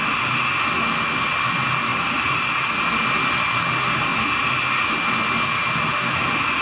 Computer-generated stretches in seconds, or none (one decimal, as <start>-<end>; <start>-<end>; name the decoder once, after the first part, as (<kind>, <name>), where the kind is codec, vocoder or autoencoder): 1.9-2.4 (vocoder, BigVGAN v2)